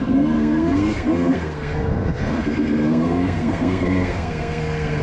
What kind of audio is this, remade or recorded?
remade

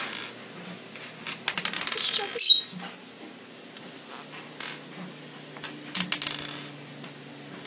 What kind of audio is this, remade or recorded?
recorded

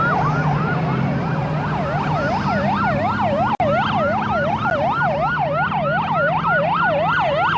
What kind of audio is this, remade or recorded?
recorded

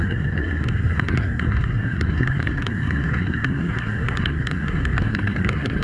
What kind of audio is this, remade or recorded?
remade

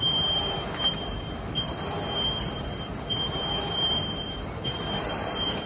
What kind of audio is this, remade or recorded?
remade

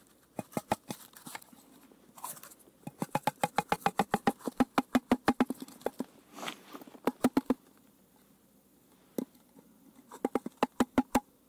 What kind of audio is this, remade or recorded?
recorded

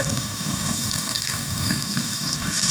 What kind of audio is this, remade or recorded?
remade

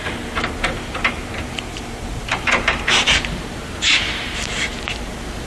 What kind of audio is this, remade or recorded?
remade